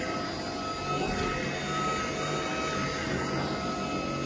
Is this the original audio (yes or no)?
yes